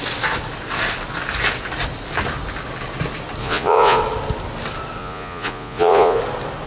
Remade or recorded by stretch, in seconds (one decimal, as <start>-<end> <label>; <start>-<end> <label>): 0.0-3.4 recorded; 3.4-4.0 remade; 4.0-5.0 recorded; 5.0-6.2 remade; 6.2-6.7 recorded